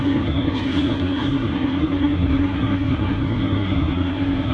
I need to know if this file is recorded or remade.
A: remade